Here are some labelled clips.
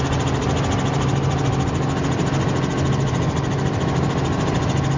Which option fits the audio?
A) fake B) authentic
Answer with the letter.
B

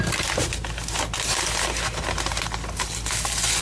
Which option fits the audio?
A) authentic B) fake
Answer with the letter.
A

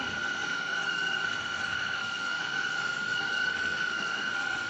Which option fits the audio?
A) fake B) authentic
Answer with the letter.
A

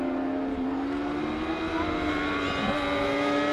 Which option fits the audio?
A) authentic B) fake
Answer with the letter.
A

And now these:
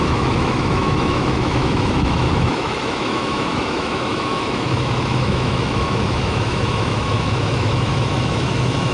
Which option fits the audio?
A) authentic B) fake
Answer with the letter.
B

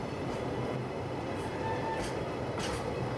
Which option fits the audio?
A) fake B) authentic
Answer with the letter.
B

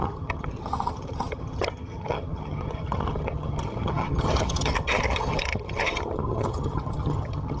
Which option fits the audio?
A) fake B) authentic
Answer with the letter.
A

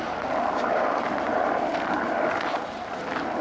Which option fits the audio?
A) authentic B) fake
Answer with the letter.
A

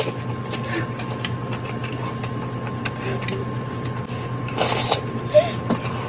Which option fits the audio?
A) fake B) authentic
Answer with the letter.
B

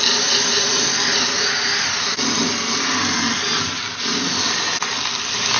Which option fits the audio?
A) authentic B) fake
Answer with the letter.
A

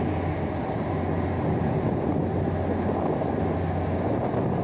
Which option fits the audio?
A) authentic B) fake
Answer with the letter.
A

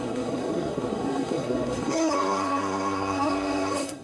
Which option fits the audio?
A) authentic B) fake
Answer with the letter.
B